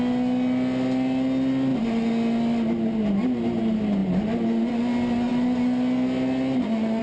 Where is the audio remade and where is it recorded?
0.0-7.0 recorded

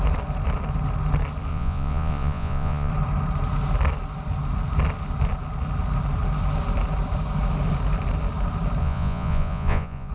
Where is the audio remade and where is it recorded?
0.0-1.5 recorded; 1.5-2.9 remade; 2.9-8.8 recorded; 8.8-10.1 remade